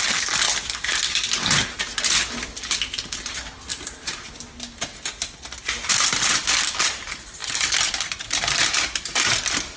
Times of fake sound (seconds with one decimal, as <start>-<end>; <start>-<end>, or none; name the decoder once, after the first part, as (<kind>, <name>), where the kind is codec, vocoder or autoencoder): 3.7-4.4 (vocoder, BigVGAN v2); 7.4-8.4

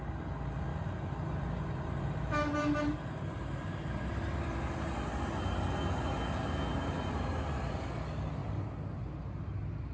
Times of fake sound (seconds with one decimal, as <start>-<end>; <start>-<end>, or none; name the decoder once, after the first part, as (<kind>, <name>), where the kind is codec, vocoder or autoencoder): none

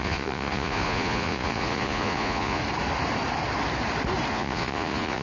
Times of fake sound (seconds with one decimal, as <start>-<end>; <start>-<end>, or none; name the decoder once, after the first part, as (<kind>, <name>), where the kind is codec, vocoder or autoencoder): 0.0-2.6 (vocoder, Vocos); 4.3-5.2